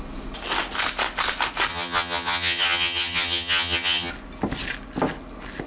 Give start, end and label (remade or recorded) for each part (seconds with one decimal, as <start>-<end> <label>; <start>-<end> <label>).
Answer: 0.0-1.7 recorded; 1.7-4.1 remade; 4.1-5.7 recorded

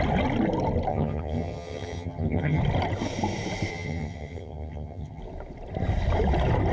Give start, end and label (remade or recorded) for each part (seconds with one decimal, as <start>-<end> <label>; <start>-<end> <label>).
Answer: 0.0-0.9 recorded; 0.9-2.6 remade; 2.6-3.7 recorded; 3.7-5.2 remade; 5.2-6.7 recorded

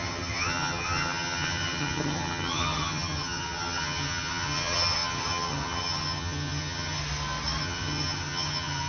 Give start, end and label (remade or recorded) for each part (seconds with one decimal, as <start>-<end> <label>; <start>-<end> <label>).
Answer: 0.0-7.0 remade; 7.0-7.6 recorded; 7.6-8.9 remade

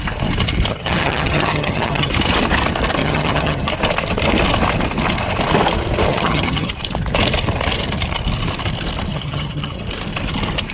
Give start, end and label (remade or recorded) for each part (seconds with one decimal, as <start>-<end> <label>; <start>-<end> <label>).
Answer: 0.0-0.7 recorded; 0.7-2.1 remade; 2.1-3.0 recorded; 3.0-3.7 remade; 3.7-6.1 recorded; 6.1-6.7 remade; 6.7-9.1 recorded; 9.1-9.9 remade; 9.9-10.7 recorded

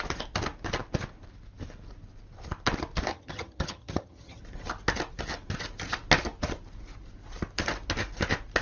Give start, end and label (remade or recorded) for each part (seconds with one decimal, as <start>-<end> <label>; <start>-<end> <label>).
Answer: 0.0-3.1 recorded; 3.1-4.4 remade; 4.4-8.6 recorded